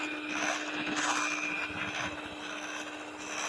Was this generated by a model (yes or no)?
no